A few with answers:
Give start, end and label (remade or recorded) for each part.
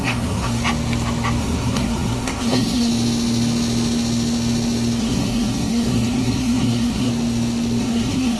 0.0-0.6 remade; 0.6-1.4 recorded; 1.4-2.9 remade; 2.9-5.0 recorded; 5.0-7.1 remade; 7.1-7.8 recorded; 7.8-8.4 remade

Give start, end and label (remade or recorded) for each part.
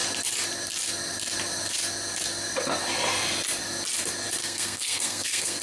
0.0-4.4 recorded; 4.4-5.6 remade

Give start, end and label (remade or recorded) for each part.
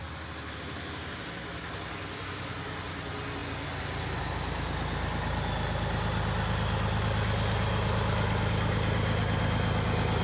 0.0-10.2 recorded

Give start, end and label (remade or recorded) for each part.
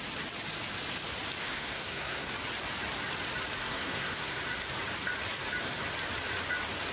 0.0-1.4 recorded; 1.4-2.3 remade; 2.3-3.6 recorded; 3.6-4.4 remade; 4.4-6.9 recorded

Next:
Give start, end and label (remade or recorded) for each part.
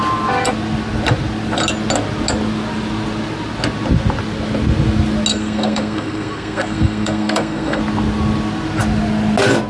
0.0-5.3 recorded; 5.3-7.8 remade; 7.8-9.7 recorded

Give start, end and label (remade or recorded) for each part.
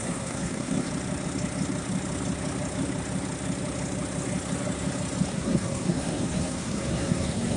0.0-0.9 remade; 0.9-5.3 recorded; 5.3-7.6 remade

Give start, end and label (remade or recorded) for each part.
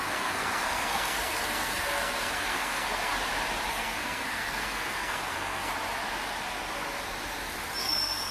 0.0-3.1 remade; 3.1-3.7 recorded; 3.7-5.7 remade; 5.7-7.8 recorded; 7.8-8.3 remade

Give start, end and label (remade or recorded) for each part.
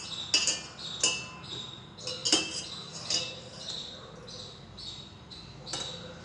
0.0-6.2 recorded